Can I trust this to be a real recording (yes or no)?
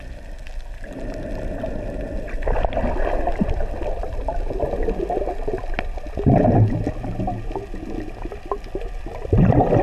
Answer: yes